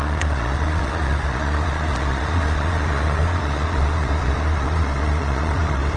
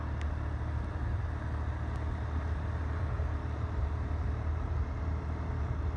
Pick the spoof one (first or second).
first